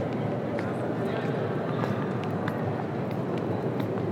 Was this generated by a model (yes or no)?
no